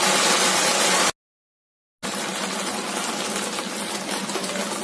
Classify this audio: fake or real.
real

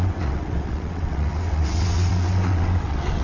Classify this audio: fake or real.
fake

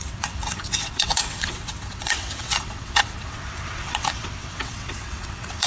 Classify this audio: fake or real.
fake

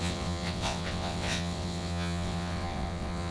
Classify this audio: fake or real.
fake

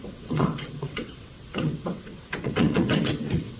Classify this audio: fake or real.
fake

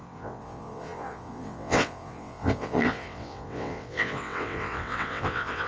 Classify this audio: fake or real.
fake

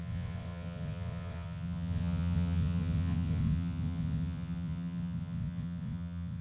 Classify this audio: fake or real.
fake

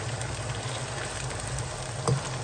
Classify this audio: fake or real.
real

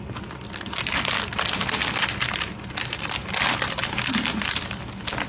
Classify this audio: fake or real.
real